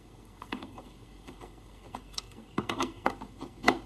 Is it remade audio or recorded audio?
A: remade